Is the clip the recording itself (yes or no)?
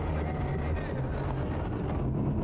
yes